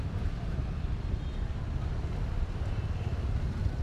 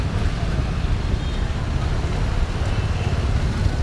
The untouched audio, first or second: second